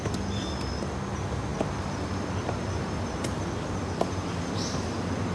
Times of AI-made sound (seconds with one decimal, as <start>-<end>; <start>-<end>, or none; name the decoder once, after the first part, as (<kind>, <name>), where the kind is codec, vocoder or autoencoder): 1.5-3.6 (vocoder, BigVGAN v2)